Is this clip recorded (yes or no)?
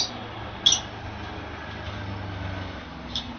yes